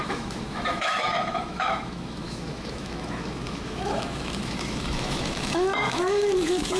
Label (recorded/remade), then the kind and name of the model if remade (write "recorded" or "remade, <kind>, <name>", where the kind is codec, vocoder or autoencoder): remade, autoencoder, DAC-VAE